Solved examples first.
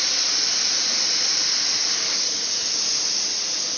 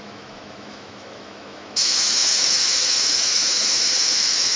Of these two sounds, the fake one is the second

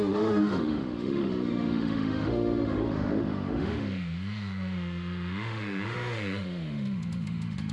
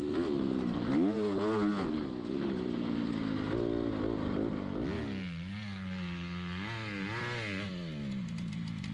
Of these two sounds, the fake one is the first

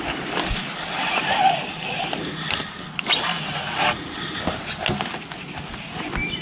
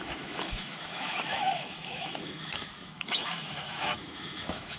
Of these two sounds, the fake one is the second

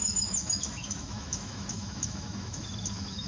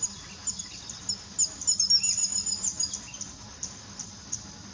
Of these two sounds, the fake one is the first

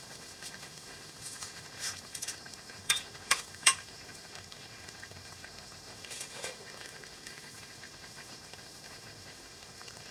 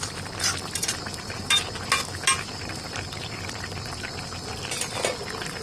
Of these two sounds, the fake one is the first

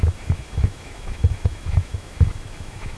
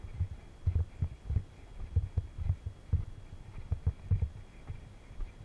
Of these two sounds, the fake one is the first